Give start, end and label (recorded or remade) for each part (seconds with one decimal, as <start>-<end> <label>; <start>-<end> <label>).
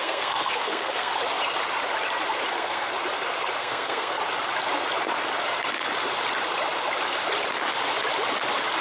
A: 0.0-1.1 remade; 1.1-2.5 recorded; 2.5-2.9 remade; 2.9-3.6 recorded; 3.6-4.2 remade; 4.2-8.8 recorded